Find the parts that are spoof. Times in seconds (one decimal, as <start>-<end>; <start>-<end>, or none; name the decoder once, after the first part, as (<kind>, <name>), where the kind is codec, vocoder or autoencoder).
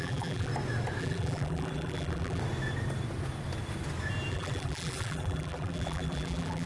0.0-0.5 (vocoder, BigVGAN v2); 1.0-2.4; 4.3-6.7